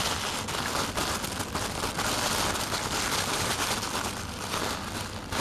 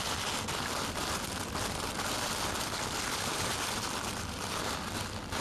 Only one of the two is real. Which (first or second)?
first